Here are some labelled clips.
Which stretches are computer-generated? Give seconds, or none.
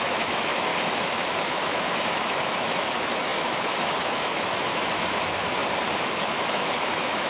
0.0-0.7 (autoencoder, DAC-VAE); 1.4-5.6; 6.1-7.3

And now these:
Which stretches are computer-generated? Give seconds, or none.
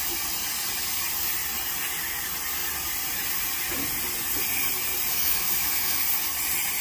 5.1-6.0 (autoencoder, DAC-VAE)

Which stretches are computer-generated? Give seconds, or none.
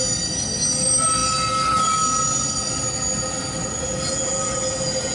none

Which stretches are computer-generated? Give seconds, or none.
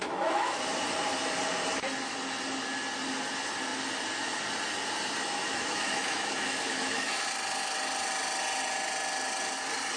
0.0-0.6 (autoencoder, DAC-VAE); 5.2-7.3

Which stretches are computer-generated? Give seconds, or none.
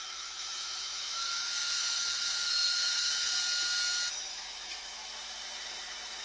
0.0-3.3 (autoencoder, DAC-VAE); 4.1-5.0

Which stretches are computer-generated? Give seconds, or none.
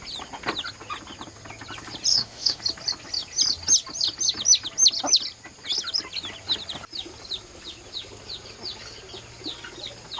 2.1-2.6 (autoencoder, DAC-VAE)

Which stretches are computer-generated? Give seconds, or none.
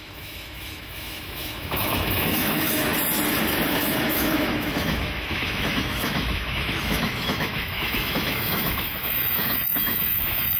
0.0-2.9 (autoencoder, DAC-VAE); 3.7-10.6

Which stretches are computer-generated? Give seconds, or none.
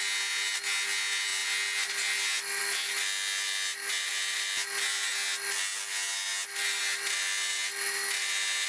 none